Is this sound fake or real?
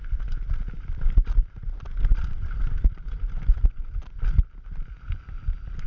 real